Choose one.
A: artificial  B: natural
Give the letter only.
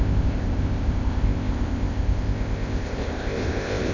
A